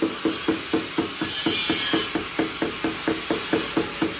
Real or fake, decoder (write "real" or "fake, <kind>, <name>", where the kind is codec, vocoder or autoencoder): real